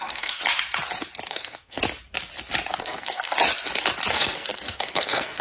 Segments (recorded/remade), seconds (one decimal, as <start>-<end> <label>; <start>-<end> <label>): 0.0-0.4 remade; 0.4-1.3 recorded; 1.3-1.8 remade; 1.8-2.8 recorded; 2.8-3.3 remade; 3.3-4.1 recorded; 4.1-5.4 remade